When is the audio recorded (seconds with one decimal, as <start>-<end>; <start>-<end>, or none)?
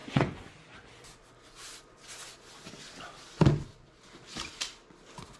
0.5-5.4